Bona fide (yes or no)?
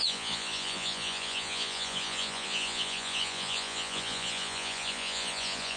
no